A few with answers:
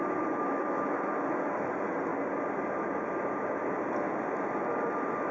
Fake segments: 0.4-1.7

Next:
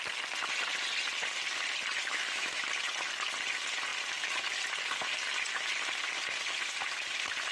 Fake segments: 2.0-2.6

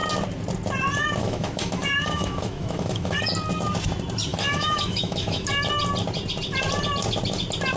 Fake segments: 1.2-3.3; 4.3-5.5

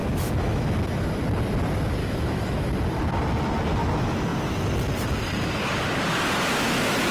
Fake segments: 0.0-0.7; 2.0-2.7

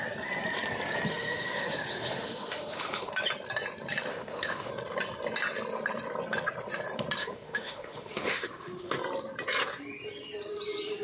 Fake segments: 1.1-3.1; 4.1-4.7; 7.2-8.9

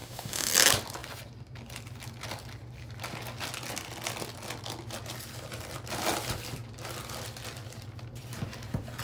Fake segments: 0.0-0.5

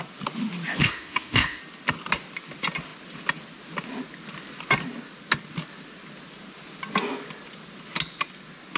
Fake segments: 0.8-1.6

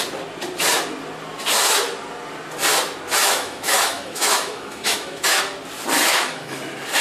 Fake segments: 3.2-5.4; 6.1-6.6